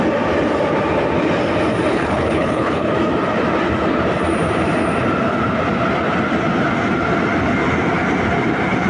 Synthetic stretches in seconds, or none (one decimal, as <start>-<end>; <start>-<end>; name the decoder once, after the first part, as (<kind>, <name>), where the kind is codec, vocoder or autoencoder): 1.9-2.9 (codec, HILCodec)